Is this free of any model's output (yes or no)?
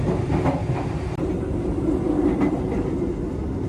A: yes